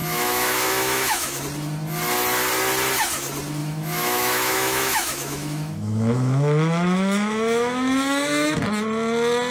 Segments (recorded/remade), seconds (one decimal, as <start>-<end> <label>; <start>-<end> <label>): 0.0-1.4 remade; 1.4-3.6 recorded; 3.6-8.6 remade; 8.6-9.5 recorded